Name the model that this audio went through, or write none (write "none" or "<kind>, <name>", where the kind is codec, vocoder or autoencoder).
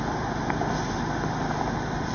none